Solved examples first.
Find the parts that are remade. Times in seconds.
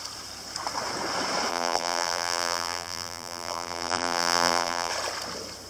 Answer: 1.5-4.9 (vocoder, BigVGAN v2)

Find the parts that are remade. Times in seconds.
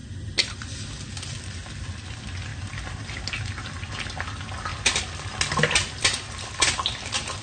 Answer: none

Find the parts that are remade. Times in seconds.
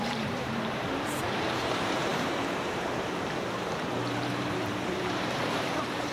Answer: 0.0-6.1 (vocoder, BigVGAN v2)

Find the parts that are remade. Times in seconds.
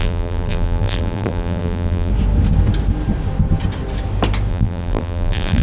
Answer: 0.0-2.1 (vocoder, BigVGAN v2); 4.5-5.6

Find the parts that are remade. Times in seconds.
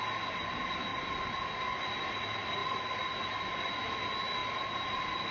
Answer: none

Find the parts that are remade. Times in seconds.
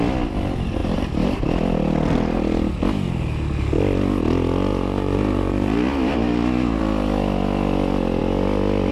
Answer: 0.8-1.4 (vocoder, BigVGAN v2); 4.7-6.8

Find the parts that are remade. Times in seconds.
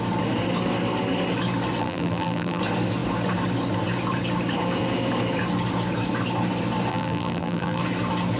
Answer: 1.8-2.6 (vocoder, BigVGAN v2); 6.9-7.8